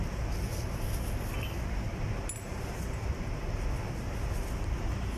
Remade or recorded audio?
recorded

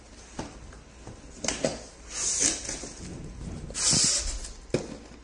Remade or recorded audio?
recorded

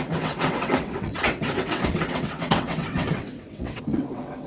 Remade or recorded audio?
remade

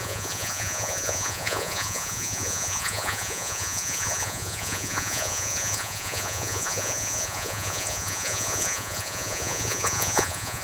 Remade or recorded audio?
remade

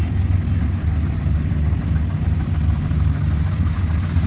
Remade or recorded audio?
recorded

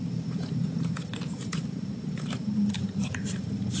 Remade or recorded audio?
remade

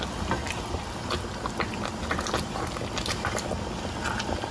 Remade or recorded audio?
recorded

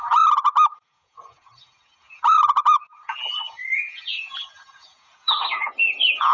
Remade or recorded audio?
remade